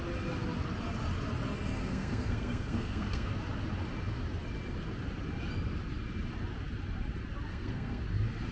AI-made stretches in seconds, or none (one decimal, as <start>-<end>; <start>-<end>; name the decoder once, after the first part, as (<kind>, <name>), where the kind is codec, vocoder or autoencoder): 1.8-3.3 (codec, SNAC); 7.5-8.0